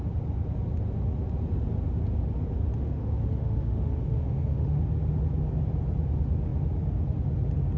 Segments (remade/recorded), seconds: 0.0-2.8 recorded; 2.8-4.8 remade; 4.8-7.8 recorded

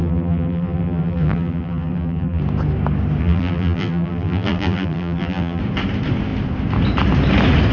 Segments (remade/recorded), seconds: 0.0-2.4 remade; 2.4-3.2 recorded; 3.2-5.6 remade; 5.6-7.7 recorded

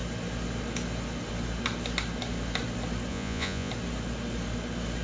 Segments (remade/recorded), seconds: 0.0-3.1 recorded; 3.1-3.7 remade; 3.7-5.0 recorded

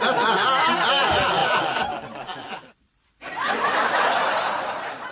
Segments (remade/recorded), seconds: 0.0-1.4 recorded; 1.4-4.5 remade; 4.5-5.1 recorded

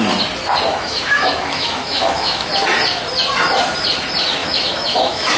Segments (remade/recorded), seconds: 0.0-0.7 recorded; 0.7-2.5 remade; 2.5-4.4 recorded; 4.4-5.4 remade

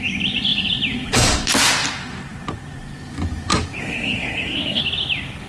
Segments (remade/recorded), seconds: 0.0-3.8 recorded; 3.8-4.8 remade; 4.8-5.5 recorded

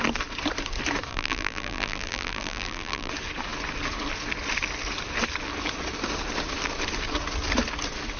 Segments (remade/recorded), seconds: 0.0-1.1 recorded; 1.1-3.1 remade; 3.1-8.2 recorded

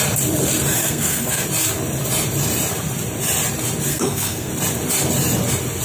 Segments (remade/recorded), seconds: 0.0-0.8 recorded; 0.8-1.4 remade; 1.4-3.9 recorded; 3.9-4.5 remade; 4.5-5.8 recorded